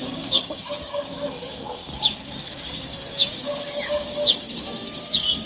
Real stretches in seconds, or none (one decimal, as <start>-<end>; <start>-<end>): 1.8-2.5